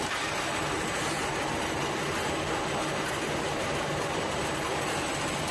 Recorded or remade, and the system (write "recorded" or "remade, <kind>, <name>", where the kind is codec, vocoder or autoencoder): recorded